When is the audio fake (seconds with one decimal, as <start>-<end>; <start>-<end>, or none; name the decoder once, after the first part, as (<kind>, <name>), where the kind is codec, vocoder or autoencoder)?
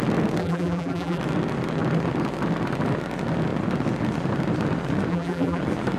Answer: 0.4-1.2 (vocoder, BigVGAN v2); 5.1-5.6